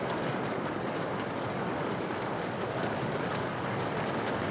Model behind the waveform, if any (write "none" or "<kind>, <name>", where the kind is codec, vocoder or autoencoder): codec, DAC